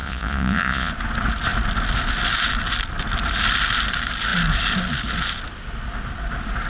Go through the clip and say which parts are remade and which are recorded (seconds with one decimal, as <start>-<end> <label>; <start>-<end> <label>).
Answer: 0.0-0.9 remade; 0.9-6.7 recorded